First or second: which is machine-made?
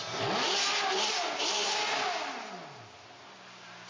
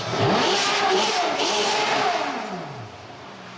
second